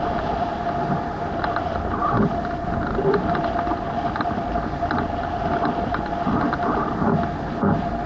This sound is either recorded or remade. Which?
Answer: recorded